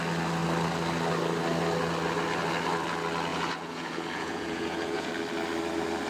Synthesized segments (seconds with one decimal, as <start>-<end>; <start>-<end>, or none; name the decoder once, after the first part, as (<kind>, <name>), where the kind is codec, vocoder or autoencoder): 3.3-5.1 (vocoder, Vocos)